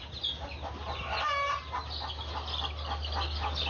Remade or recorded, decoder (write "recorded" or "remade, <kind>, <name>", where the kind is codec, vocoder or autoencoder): recorded